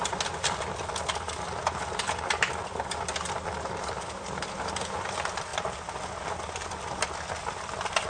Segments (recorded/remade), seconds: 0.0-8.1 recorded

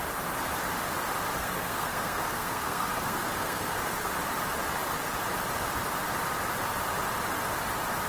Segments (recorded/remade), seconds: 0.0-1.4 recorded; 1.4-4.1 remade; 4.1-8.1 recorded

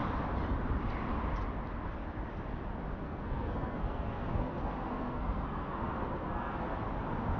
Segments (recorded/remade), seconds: 0.0-3.0 recorded; 3.0-6.8 remade; 6.8-7.4 recorded

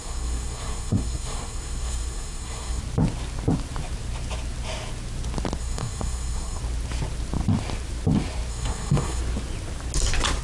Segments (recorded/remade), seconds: 0.0-2.8 remade; 2.8-5.6 recorded; 5.6-6.6 remade; 6.6-8.5 recorded; 8.5-9.2 remade; 9.2-10.4 recorded

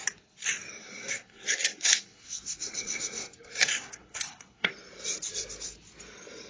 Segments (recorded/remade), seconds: 0.0-0.8 recorded; 0.8-4.7 remade; 4.7-6.5 recorded

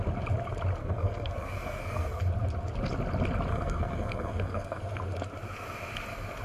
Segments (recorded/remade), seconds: 0.0-0.8 recorded; 0.8-2.2 remade; 2.2-3.5 recorded; 3.5-4.8 remade; 4.8-6.4 recorded

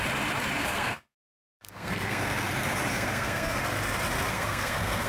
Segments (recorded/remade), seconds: 0.0-0.6 recorded; 0.6-2.5 remade; 2.5-2.9 recorded; 2.9-3.6 remade; 3.6-4.3 recorded; 4.3-5.1 remade

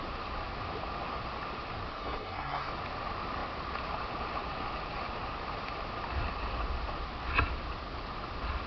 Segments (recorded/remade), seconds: 0.0-1.9 recorded; 1.9-2.7 remade; 2.7-8.7 recorded